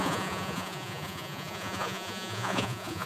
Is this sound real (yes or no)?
no